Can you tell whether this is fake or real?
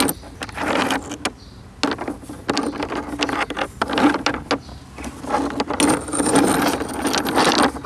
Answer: real